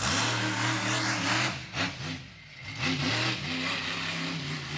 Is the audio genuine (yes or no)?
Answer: yes